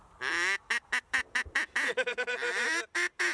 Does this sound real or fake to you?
fake